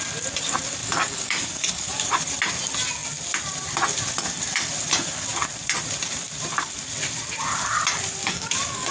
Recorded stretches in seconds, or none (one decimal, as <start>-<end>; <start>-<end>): 0.0-0.8; 2.1-8.2